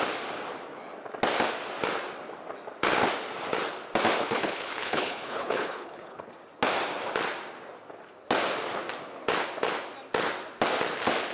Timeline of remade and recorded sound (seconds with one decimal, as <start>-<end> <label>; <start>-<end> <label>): 0.0-4.2 recorded; 4.2-6.3 remade; 6.3-11.3 recorded